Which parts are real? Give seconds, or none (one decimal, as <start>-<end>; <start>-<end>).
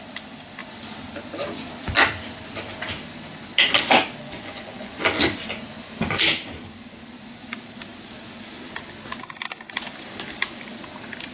0.0-4.2; 5.0-11.3